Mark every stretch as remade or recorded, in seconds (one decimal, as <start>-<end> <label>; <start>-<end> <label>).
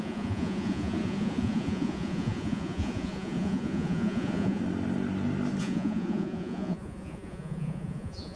0.0-4.6 remade; 4.6-5.6 recorded; 5.6-8.4 remade